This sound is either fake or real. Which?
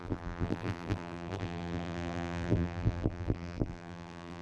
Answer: fake